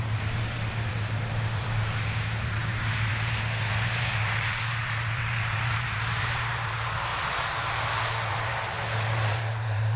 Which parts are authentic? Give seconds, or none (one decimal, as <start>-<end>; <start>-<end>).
7.1-8.3